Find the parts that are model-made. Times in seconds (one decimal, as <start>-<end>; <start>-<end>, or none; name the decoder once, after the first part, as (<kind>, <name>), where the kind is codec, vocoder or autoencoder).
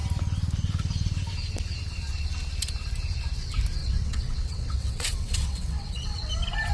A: 3.8-6.3 (vocoder, WaveNeXt)